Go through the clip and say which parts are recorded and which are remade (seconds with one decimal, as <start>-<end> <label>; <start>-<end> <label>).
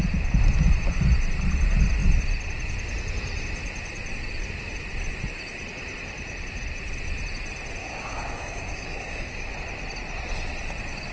0.0-7.8 recorded; 7.8-9.5 remade; 9.5-11.1 recorded